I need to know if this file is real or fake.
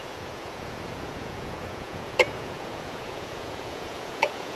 fake